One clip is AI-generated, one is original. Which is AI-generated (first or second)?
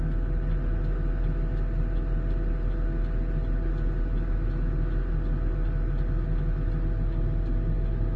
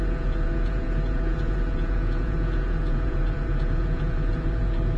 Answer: second